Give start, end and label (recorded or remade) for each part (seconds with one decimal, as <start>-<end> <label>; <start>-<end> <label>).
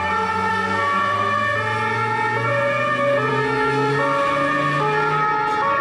0.0-0.5 recorded; 0.5-1.0 remade; 1.0-3.3 recorded; 3.3-3.9 remade; 3.9-5.8 recorded